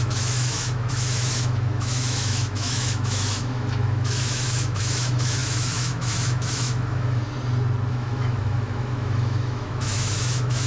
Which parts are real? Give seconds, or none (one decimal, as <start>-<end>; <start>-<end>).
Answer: 7.2-7.9